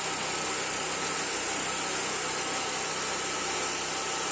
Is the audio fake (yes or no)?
no